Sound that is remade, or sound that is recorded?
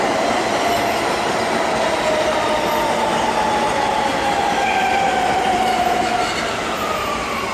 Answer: recorded